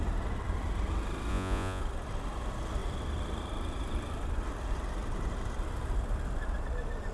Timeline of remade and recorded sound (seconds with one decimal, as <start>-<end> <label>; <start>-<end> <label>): 0.0-1.3 recorded; 1.3-1.8 remade; 1.8-7.1 recorded